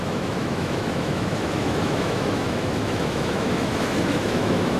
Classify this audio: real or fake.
fake